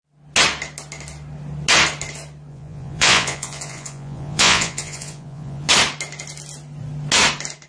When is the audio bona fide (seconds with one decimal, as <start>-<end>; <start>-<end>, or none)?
0.0-2.5; 5.7-7.7